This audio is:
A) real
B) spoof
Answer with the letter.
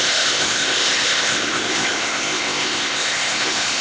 B